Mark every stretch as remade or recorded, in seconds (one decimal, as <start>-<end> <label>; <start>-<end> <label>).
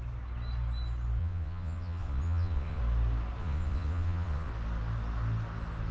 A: 0.0-1.2 recorded; 1.2-2.8 remade; 2.8-3.4 recorded; 3.4-4.5 remade; 4.5-5.9 recorded